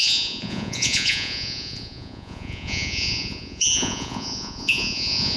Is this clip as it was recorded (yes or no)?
no